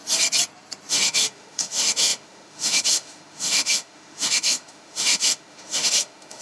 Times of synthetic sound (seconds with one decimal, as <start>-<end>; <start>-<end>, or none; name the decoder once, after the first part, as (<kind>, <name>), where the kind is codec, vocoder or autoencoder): 0.9-6.4 (autoencoder, DAC-VAE)